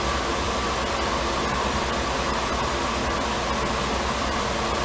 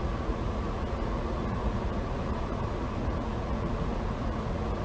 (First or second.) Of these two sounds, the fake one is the second